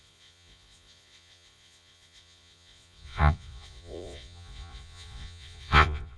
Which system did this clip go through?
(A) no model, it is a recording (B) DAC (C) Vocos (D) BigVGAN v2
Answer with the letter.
C